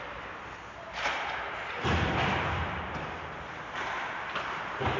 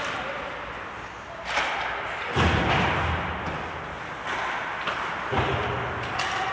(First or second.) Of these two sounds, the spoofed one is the first